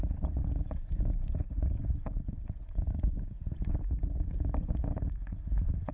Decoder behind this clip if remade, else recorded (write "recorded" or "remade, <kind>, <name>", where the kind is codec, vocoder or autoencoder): remade, vocoder, Vocos